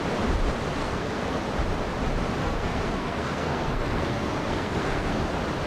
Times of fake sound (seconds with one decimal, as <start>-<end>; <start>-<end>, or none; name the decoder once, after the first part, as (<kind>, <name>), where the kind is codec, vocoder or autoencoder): 0.8-1.4 (codec, SNAC); 2.4-5.2